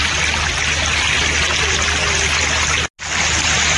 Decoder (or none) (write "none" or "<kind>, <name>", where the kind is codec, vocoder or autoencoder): none